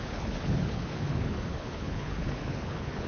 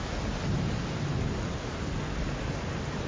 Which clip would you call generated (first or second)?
first